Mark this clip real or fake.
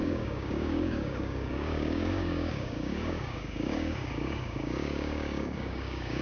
fake